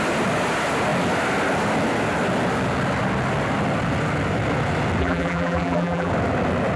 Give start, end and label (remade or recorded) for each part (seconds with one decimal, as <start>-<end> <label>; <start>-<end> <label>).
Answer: 0.0-5.0 recorded; 5.0-6.1 remade; 6.1-6.8 recorded